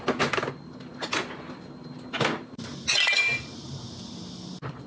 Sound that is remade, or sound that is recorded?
recorded